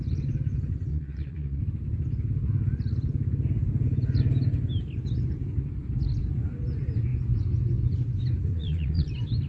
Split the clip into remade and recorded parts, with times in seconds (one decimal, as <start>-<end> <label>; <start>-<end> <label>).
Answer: 0.0-0.9 recorded; 0.9-1.6 remade; 1.6-8.5 recorded; 8.5-9.1 remade; 9.1-9.5 recorded